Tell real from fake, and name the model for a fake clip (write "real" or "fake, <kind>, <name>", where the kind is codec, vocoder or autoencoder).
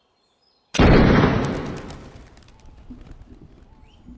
real